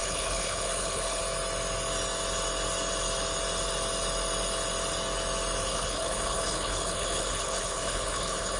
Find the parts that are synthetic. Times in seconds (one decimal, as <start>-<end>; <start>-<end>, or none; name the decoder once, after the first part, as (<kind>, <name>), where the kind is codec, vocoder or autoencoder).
0.0-1.2 (codec, HILCodec); 5.6-8.6